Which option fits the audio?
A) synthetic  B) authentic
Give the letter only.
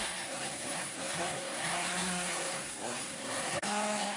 A